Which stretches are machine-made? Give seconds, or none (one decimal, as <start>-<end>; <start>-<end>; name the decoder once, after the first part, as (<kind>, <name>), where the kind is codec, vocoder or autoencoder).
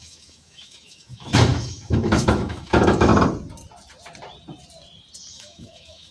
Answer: 0.0-3.1 (autoencoder, DAC-VAE); 5.3-6.1